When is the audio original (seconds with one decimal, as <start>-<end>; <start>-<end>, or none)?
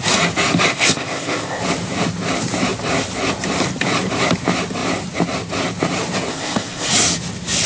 0.0-0.7; 1.6-6.3; 6.9-7.7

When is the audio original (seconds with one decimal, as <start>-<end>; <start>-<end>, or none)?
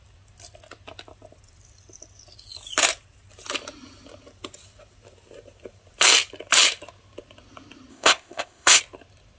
0.0-7.9; 8.8-9.4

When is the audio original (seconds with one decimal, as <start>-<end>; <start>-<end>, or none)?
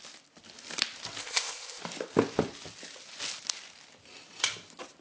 0.0-1.2; 1.8-5.0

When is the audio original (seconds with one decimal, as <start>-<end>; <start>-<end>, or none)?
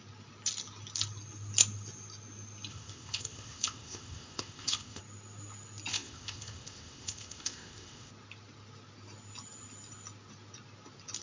0.0-2.7; 5.0-5.9; 8.1-11.2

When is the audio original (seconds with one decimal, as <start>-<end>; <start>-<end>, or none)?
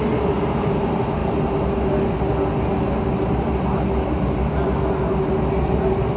0.0-6.2